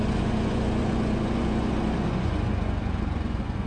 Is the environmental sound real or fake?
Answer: fake